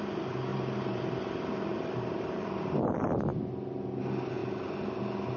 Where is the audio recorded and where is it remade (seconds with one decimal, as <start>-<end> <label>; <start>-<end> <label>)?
0.0-0.5 recorded; 0.5-2.8 remade; 2.8-5.4 recorded